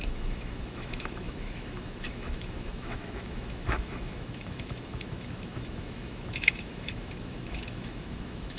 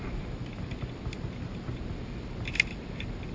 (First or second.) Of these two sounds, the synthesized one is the first